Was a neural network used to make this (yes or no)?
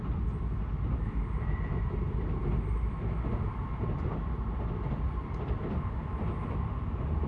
no